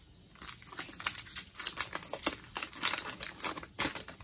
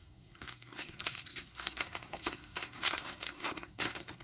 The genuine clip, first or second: first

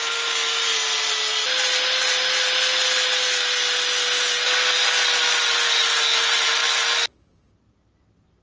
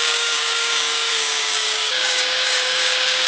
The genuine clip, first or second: first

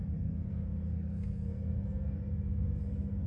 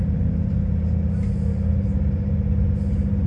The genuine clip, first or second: second